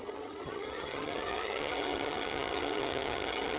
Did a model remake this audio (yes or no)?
yes